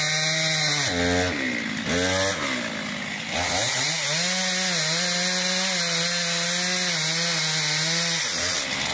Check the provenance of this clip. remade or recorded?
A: recorded